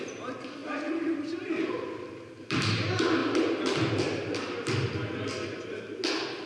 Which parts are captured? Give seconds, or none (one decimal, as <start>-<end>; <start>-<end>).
0.0-6.5